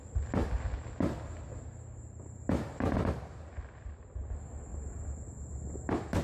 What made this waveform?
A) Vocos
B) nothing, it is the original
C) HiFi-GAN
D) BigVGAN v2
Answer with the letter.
B